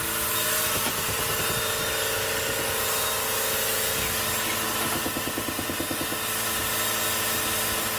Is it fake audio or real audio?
real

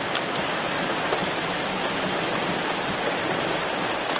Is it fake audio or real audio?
real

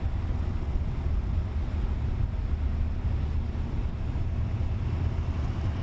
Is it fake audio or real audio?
real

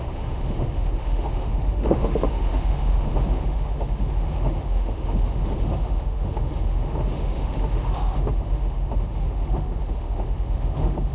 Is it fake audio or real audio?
fake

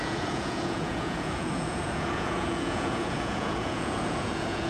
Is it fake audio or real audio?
fake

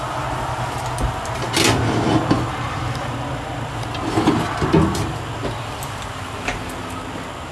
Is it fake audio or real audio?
real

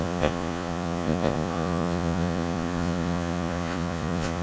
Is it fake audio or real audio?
fake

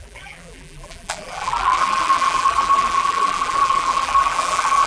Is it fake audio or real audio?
fake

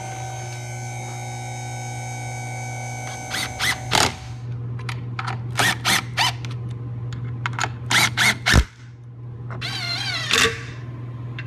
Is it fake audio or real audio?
real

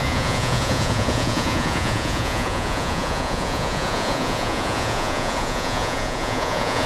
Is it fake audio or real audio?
fake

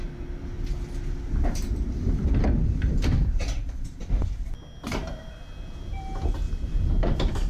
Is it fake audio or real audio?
real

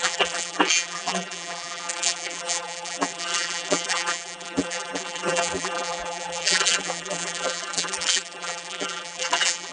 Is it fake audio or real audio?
fake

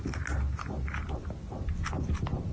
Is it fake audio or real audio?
real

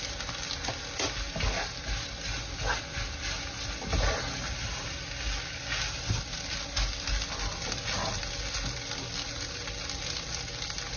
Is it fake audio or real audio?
real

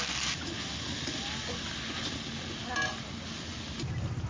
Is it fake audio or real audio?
real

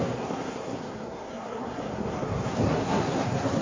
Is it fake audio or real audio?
fake